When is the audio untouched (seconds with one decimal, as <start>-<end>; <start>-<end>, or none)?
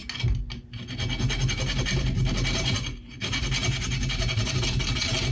0.0-5.3